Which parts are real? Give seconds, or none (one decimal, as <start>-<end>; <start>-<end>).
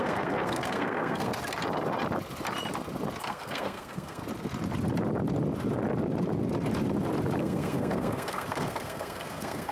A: 1.3-3.2; 4.2-7.4